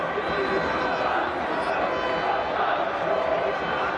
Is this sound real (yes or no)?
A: yes